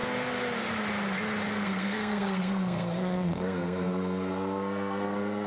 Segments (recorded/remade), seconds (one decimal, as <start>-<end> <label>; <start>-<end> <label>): 0.0-1.5 recorded; 1.5-5.5 remade